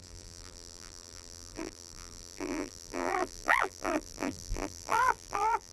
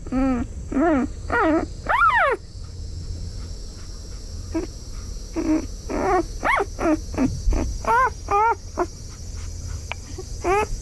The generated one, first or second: first